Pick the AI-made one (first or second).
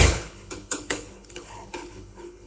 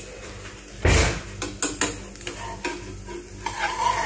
first